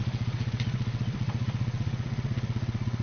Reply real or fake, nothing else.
fake